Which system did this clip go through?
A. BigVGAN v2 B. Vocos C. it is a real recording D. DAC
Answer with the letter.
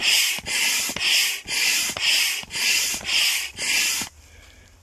C